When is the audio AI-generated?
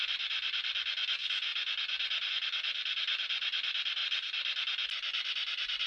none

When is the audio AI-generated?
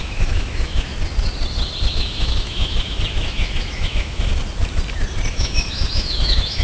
0.0-0.9 (autoencoder, DAC-VAE); 1.9-4.3; 5.3-6.6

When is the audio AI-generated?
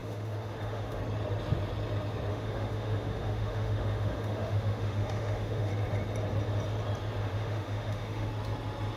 0.0-1.0 (autoencoder, DAC-VAE); 2.3-5.7; 7.2-8.3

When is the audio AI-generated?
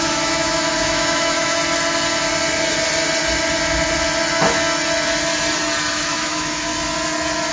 0.0-1.6 (autoencoder, DAC-VAE); 5.9-6.7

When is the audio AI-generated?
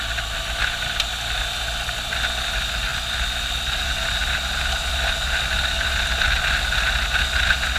none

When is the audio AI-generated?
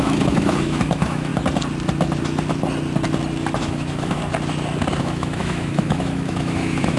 0.0-1.3 (autoencoder, DAC-VAE); 3.6-4.2; 5.0-7.0